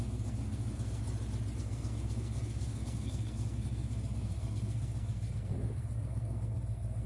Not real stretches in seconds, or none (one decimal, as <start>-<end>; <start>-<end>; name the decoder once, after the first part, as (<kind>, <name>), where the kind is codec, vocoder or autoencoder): 0.0-1.0 (codec, SNAC); 1.6-7.1